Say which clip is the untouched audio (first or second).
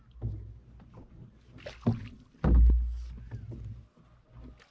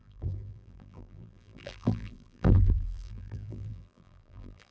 first